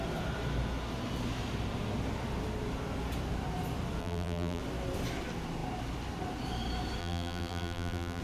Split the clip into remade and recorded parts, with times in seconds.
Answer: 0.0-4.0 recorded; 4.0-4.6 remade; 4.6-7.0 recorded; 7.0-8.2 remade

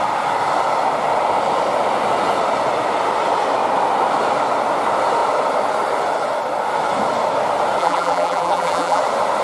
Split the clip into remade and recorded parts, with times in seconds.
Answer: 0.0-7.8 recorded; 7.8-9.0 remade; 9.0-9.4 recorded

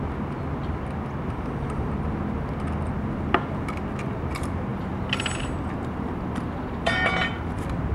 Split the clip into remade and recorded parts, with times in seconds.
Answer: 0.0-4.7 recorded; 4.7-7.1 remade; 7.1-7.9 recorded

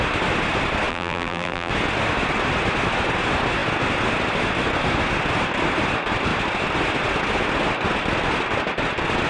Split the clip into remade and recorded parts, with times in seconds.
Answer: 0.0-0.9 recorded; 0.9-1.7 remade; 1.7-9.3 recorded

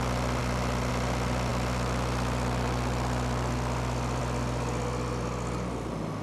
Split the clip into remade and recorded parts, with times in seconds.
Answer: 0.0-6.2 recorded

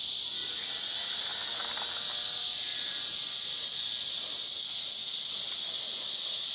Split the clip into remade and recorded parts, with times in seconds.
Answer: 0.0-2.7 recorded; 2.7-3.5 remade; 3.5-6.5 recorded

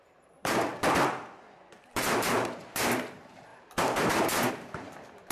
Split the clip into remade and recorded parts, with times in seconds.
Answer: 0.0-0.7 remade; 0.7-1.6 recorded; 1.6-5.3 remade